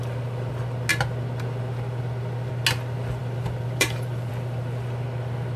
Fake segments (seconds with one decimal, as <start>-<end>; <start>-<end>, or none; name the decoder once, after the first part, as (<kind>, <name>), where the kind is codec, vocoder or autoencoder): 3.2-4.3 (vocoder, BigVGAN v2)